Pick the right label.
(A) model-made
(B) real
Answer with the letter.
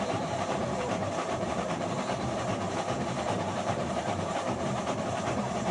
A